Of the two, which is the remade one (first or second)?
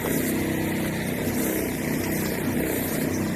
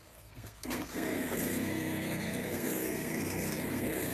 second